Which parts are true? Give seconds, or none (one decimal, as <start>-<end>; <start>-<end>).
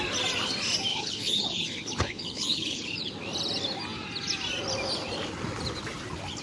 0.0-0.9; 3.1-6.4